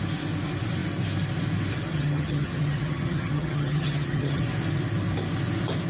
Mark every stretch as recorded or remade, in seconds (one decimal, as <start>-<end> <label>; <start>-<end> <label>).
0.0-1.9 recorded; 1.9-4.4 remade; 4.4-5.9 recorded

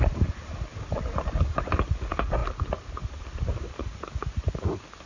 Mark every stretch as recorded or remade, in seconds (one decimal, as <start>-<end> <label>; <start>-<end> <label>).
0.0-5.1 recorded

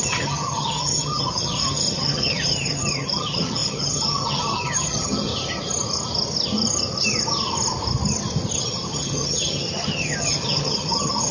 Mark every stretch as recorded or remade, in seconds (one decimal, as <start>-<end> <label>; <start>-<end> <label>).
0.0-5.3 remade; 5.3-8.6 recorded; 8.6-11.3 remade